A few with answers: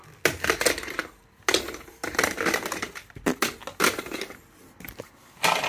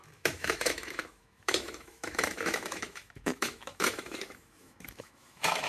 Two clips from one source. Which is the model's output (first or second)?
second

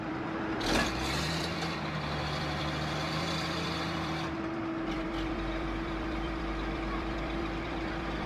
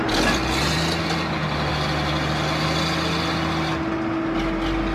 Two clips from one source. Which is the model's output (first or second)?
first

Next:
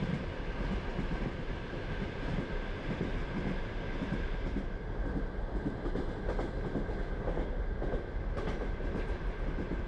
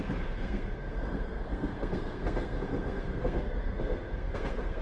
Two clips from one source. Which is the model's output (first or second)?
second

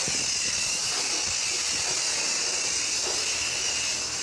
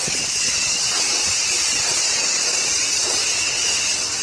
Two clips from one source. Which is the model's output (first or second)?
second